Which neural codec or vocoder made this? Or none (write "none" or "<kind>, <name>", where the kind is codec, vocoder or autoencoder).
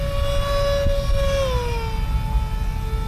none